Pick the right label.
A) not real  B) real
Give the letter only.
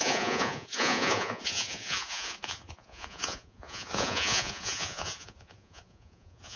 A